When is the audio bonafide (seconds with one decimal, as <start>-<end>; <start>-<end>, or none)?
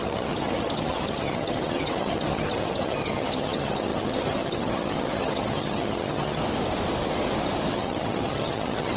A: 6.4-7.7